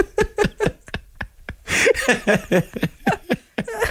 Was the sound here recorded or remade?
remade